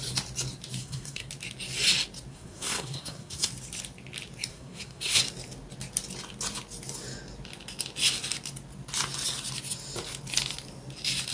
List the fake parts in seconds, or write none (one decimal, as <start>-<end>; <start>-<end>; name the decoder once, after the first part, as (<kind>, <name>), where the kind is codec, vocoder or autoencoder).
0.8-1.3 (codec, SNAC); 2.3-3.5; 4.5-5.2